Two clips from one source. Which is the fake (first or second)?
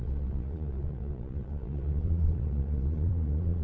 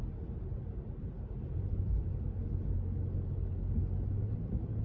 first